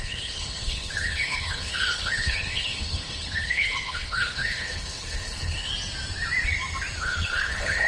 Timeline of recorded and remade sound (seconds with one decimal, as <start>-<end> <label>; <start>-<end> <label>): 0.0-5.7 remade; 5.7-7.0 recorded; 7.0-7.9 remade